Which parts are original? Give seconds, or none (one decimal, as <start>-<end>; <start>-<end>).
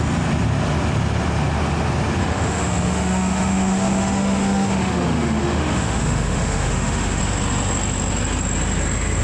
0.0-2.2; 7.2-9.2